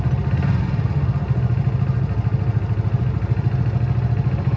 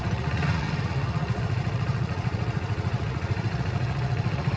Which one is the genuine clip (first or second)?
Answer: first